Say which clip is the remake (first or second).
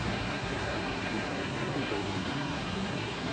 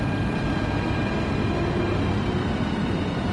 first